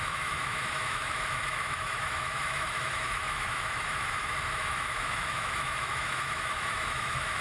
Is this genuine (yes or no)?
no